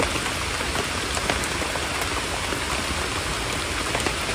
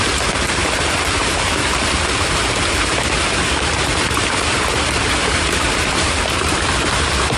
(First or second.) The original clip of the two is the first